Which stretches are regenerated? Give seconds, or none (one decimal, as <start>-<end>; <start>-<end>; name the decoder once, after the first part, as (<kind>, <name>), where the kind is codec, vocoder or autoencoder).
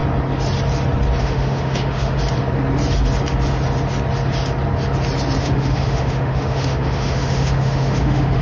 1.2-2.2 (autoencoder, DAC-VAE); 5.4-8.4